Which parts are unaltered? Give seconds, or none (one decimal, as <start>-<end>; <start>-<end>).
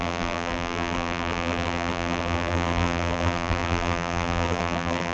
none